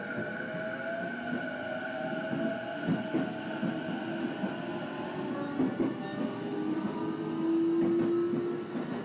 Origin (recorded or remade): recorded